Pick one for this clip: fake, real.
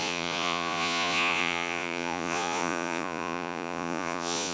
fake